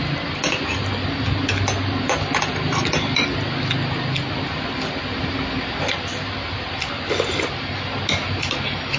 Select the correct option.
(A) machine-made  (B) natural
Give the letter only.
B